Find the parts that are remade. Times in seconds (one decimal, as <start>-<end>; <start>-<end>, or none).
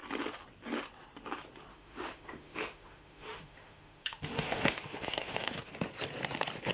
1.7-5.7